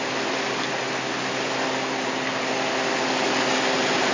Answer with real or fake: real